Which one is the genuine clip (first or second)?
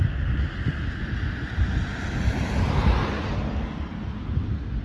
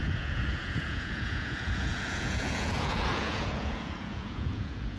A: first